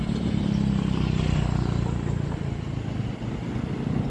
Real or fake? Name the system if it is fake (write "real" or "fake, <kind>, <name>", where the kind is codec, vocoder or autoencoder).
real